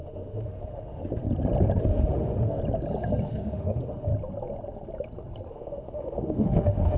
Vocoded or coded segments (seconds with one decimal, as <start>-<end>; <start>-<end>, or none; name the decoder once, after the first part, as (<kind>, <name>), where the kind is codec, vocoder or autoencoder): 0.0-1.2 (autoencoder, DAC-VAE); 1.8-2.6; 3.2-4.1; 5.5-7.0